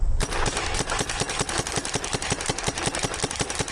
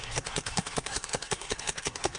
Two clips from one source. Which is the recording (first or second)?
first